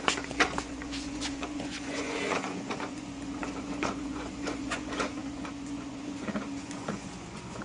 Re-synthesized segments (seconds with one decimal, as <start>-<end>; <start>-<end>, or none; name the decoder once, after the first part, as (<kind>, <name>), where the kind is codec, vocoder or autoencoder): 0.0-7.6 (vocoder, Vocos)